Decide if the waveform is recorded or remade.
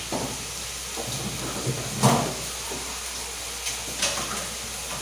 recorded